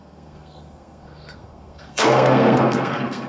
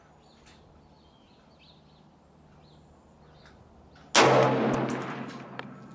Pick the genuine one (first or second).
second